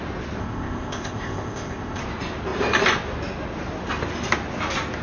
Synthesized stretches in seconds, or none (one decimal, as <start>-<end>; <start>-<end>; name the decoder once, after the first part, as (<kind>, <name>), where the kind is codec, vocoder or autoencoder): 0.4-2.0 (codec, ZipCodec)